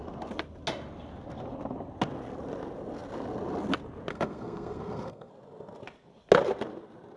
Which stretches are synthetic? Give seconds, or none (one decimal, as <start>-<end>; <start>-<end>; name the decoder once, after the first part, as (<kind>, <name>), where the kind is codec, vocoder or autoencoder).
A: 4.1-5.3 (codec, SNAC)